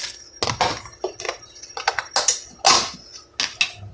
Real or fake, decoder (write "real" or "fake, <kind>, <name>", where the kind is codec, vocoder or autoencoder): real